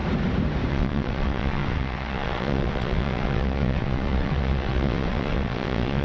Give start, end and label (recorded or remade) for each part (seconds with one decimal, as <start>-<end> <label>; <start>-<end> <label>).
0.0-0.7 recorded; 0.7-6.0 remade